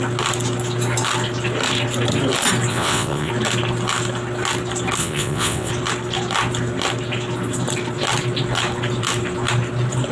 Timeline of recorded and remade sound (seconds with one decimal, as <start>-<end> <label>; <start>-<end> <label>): 0.0-2.7 recorded; 2.7-3.3 remade; 3.3-5.0 recorded; 5.0-5.7 remade; 5.7-10.1 recorded